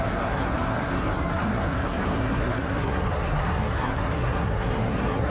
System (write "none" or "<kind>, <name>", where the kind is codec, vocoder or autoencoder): codec, SNAC